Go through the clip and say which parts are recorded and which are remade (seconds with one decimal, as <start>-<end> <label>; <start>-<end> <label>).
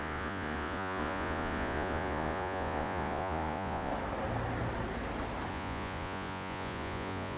0.0-3.9 remade; 3.9-5.5 recorded; 5.5-7.4 remade